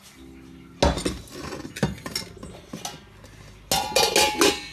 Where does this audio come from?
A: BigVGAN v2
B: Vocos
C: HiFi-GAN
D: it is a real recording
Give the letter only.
D